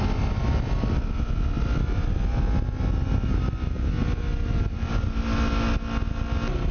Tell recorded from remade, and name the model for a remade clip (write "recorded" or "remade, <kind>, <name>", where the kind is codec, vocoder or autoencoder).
recorded